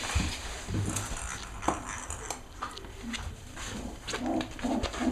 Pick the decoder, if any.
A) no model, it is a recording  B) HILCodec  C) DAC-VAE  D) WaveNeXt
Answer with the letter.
A